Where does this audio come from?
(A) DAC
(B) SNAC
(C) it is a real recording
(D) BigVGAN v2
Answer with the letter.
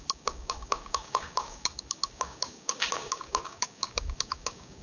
A